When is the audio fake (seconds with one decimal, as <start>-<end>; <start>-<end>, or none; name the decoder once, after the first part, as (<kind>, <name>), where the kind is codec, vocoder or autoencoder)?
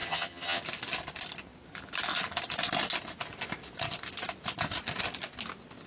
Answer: 0.0-0.6 (vocoder, HiFi-GAN)